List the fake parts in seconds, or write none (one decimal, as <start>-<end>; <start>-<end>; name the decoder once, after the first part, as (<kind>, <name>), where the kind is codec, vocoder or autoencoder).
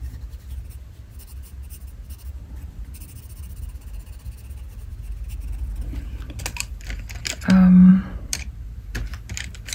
2.3-3.0 (vocoder, BigVGAN v2); 7.9-8.8